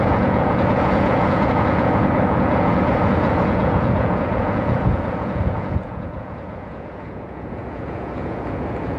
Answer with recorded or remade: remade